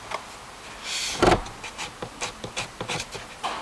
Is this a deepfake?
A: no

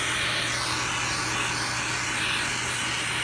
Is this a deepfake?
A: no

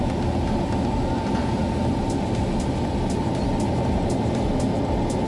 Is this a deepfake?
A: no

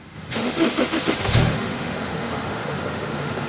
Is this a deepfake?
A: yes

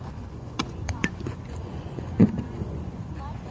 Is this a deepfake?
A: yes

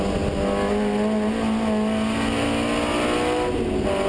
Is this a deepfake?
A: no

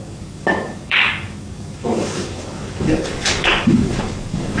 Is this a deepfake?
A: yes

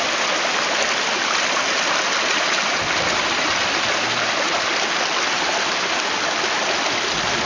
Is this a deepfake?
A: no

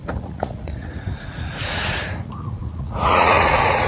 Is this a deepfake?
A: yes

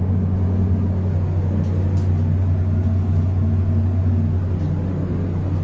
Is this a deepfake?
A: no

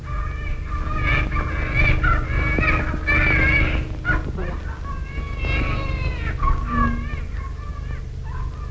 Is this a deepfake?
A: no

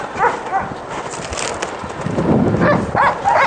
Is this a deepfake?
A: no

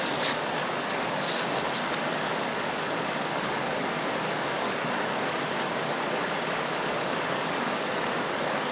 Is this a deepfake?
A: yes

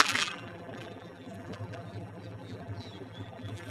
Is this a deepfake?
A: yes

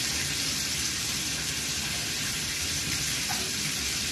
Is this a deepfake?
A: yes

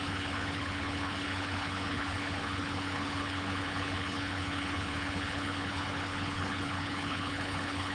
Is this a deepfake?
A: yes